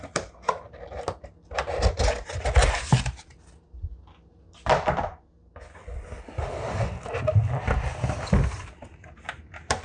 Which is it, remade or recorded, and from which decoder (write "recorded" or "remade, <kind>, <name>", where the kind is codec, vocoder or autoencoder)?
recorded